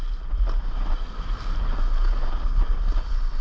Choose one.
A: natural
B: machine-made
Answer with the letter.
A